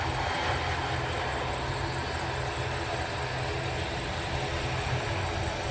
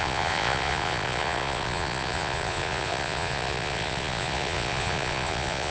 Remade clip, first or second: second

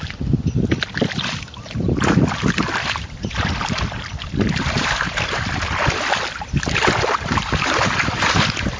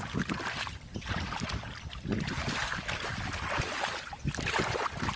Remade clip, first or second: first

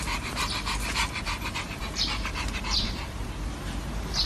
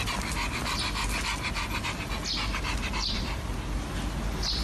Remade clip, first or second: first